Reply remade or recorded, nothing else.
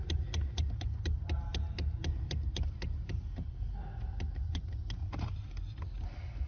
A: recorded